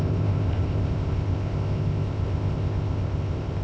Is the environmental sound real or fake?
fake